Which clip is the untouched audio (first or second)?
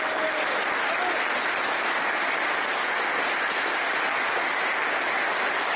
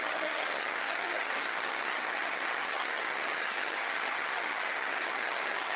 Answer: first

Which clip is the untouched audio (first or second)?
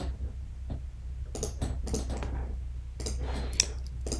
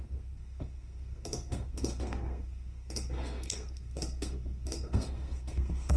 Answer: first